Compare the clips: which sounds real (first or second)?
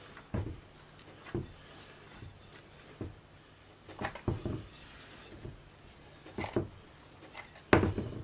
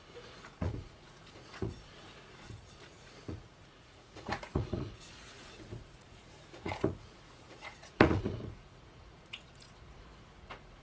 first